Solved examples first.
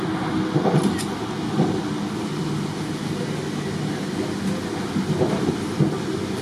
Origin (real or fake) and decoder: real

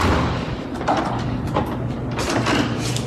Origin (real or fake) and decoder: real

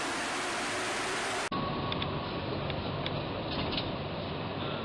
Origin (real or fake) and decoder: real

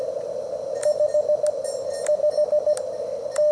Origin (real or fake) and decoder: real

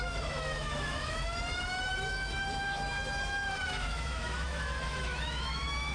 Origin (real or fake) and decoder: fake, autoencoder, DAC-VAE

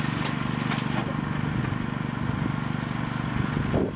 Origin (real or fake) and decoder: real